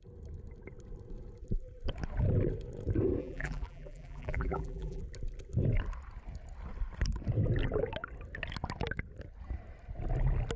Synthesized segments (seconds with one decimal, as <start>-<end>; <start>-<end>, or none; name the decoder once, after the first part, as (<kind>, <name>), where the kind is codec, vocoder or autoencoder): 3.2-5.0 (vocoder, BigVGAN v2)